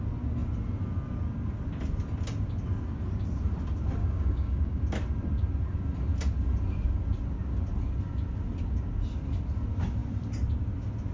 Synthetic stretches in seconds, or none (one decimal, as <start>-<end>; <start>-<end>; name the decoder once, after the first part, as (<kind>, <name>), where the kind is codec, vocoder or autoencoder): 4.0-4.8 (codec, DAC)